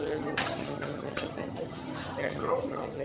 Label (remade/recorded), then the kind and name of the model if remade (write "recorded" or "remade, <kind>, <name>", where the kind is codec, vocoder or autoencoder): remade, vocoder, HiFi-GAN